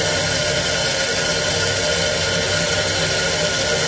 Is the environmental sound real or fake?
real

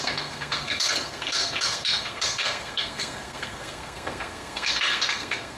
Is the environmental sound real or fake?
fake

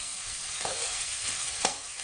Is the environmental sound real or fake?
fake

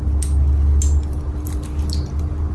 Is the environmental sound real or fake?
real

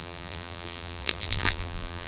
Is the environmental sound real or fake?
fake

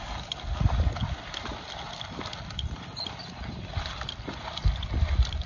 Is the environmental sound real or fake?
real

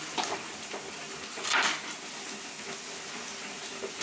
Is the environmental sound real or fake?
real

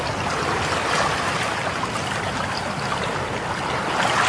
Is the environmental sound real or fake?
real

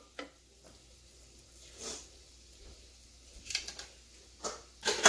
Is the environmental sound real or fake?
real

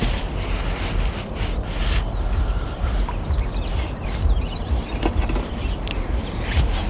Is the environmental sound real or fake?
real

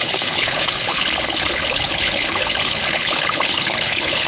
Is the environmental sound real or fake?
fake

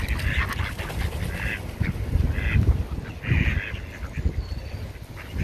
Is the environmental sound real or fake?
real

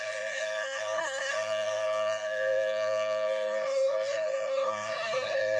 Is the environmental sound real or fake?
fake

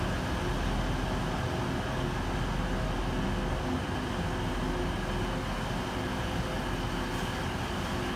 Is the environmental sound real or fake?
real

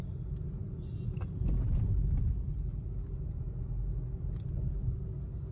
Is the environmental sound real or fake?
real